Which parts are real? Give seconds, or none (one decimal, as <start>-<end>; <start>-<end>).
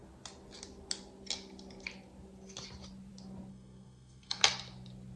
0.0-3.5; 4.4-5.2